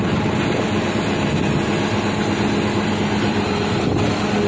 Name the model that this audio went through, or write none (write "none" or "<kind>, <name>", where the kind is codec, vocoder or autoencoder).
none